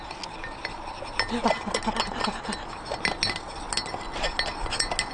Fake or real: real